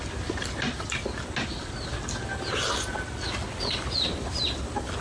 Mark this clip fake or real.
real